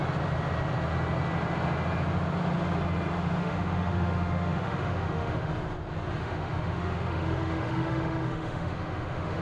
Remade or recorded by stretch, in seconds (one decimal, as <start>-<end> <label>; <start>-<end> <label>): 0.0-3.4 recorded; 3.4-5.5 remade; 5.5-6.2 recorded; 6.2-9.4 remade